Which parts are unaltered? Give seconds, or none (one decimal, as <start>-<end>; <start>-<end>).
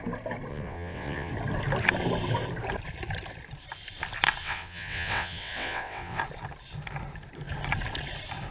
0.0-0.5; 1.3-4.4; 6.2-8.5